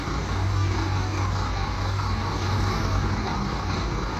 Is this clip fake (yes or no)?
yes